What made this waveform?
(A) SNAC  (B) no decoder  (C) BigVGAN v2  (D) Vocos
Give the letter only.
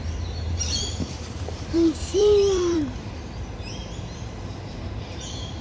C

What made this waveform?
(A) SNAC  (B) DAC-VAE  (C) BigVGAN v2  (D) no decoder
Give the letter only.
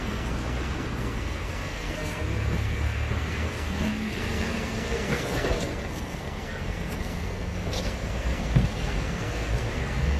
A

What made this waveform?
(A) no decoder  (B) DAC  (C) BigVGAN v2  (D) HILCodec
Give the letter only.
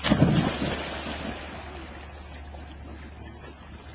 A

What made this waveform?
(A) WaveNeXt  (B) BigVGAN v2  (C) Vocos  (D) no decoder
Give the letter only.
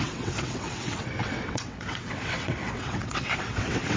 A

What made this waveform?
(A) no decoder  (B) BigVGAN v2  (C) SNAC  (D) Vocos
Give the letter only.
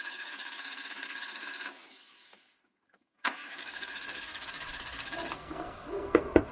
C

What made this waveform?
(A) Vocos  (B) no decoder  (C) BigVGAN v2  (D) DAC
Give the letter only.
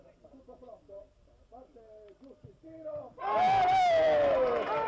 B